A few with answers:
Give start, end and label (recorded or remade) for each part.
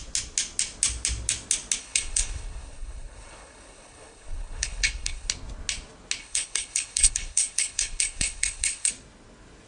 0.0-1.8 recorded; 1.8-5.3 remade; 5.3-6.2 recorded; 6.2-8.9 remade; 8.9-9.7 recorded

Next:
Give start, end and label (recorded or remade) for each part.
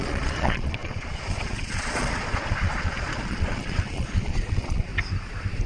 0.0-4.9 remade; 4.9-5.7 recorded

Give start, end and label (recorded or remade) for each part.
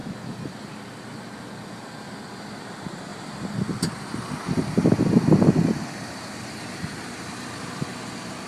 0.0-3.1 recorded; 3.1-4.8 remade; 4.8-8.5 recorded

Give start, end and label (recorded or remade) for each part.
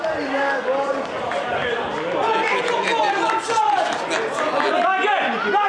0.0-5.7 recorded